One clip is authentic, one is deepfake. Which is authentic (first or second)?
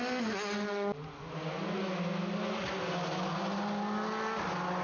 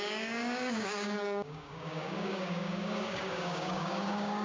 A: first